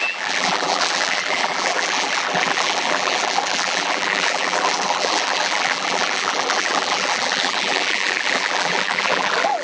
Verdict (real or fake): fake